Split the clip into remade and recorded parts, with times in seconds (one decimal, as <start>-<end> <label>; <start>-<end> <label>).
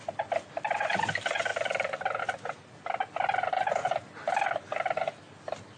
0.0-5.8 recorded